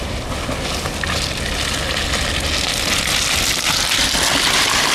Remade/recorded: recorded